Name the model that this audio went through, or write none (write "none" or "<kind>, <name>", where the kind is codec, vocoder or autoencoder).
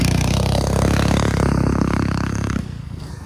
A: codec, SNAC